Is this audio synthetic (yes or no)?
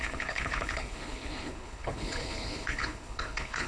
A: yes